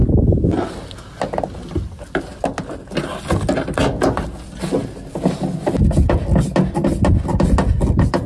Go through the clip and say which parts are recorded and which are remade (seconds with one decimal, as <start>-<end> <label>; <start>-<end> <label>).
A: 0.0-8.3 recorded